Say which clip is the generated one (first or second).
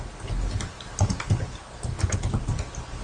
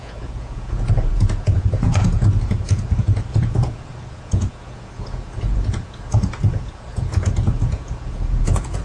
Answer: second